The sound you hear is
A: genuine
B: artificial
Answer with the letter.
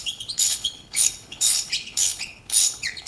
B